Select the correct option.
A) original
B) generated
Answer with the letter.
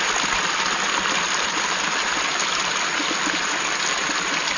A